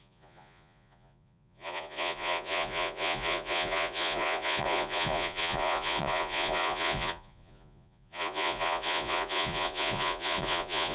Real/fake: fake